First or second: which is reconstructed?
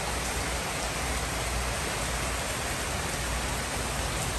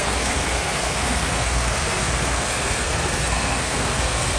second